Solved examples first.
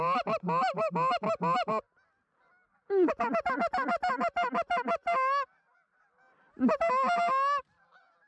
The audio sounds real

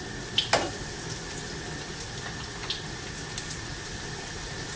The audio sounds real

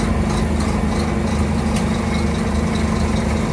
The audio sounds real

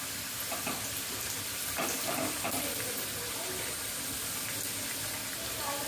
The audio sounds real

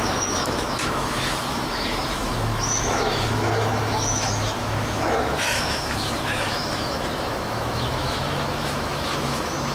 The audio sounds fake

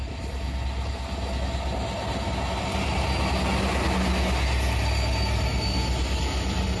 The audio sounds real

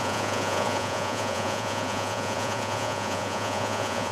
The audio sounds fake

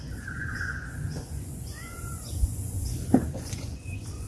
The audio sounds fake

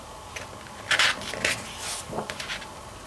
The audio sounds real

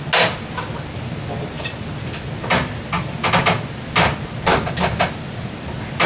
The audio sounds real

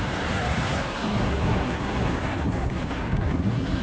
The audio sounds fake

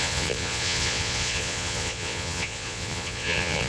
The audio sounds fake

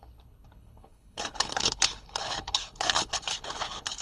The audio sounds fake